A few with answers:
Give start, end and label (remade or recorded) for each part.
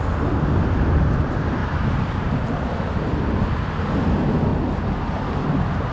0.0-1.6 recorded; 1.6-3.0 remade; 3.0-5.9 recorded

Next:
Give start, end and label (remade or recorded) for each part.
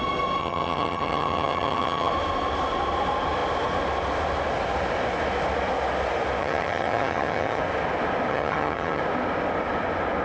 0.0-0.4 recorded; 0.4-2.1 remade; 2.1-6.4 recorded; 6.4-7.6 remade; 7.6-8.3 recorded; 8.3-9.0 remade; 9.0-10.2 recorded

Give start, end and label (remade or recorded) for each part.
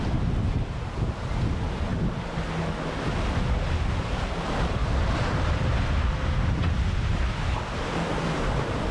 0.0-8.9 recorded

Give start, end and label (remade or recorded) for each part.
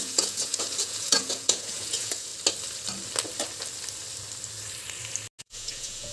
0.0-2.3 remade; 2.3-5.4 recorded; 5.4-6.1 remade